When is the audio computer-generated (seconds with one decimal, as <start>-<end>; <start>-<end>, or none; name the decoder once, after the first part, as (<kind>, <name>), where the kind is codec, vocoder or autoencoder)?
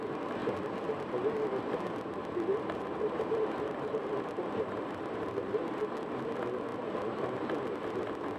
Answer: 2.5-5.8 (vocoder, BigVGAN v2)